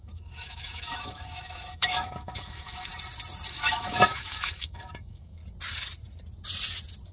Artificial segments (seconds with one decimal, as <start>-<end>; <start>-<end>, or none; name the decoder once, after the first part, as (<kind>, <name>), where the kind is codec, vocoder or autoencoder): 0.0-2.9 (autoencoder, DAC-VAE); 3.5-5.4